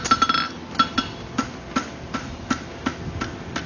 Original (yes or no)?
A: yes